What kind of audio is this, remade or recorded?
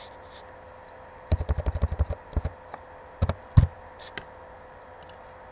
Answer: recorded